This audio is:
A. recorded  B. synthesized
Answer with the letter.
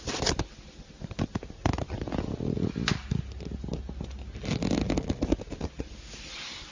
A